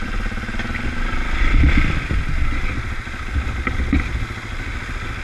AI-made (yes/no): no